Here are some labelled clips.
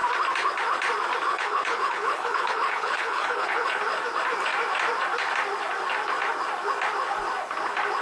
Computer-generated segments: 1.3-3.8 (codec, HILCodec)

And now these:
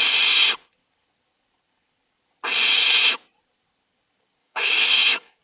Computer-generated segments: 4.4-5.4 (autoencoder, DAC-VAE)

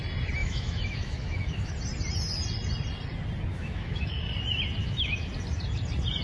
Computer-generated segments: 0.4-1.7 (autoencoder, DAC-VAE); 3.5-4.1; 4.8-5.3

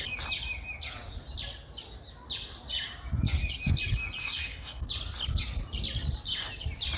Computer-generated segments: 4.2-4.8 (codec, SNAC)